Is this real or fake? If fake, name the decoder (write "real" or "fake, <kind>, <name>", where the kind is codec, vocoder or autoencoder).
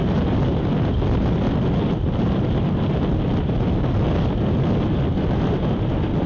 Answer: real